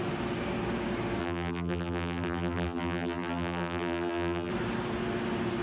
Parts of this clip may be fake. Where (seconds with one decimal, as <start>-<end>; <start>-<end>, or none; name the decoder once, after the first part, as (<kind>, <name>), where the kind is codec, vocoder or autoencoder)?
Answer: 1.2-4.5 (vocoder, BigVGAN v2)